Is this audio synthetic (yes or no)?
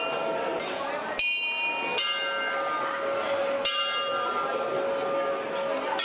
no